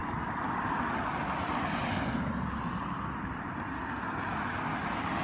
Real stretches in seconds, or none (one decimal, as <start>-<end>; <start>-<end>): 0.0-5.2